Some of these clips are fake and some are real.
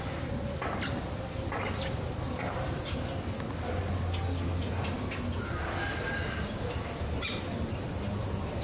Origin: real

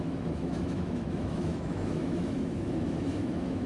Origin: fake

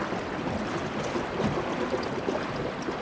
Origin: real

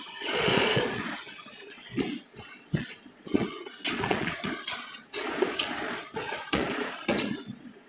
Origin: fake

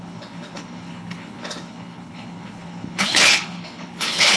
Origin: fake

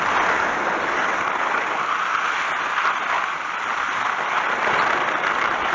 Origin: real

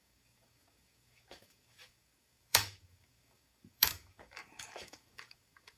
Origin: fake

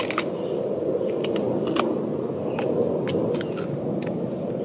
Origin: real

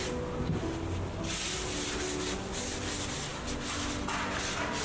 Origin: real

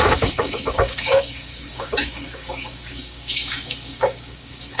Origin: fake